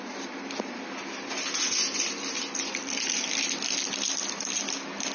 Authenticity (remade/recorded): recorded